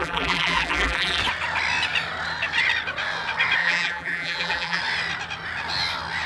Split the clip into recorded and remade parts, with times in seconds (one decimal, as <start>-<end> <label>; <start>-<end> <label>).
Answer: 0.0-1.2 remade; 1.2-3.6 recorded; 3.6-4.8 remade; 4.8-6.3 recorded